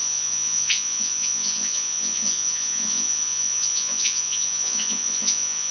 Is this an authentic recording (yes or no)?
no